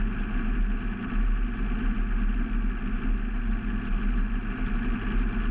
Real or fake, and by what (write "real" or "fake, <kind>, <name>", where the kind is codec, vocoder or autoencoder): real